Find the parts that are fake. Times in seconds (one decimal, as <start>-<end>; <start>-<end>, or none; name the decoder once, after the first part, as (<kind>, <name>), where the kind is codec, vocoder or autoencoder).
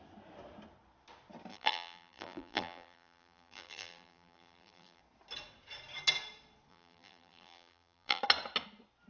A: 1.5-5.0 (vocoder, BigVGAN v2); 6.7-8.2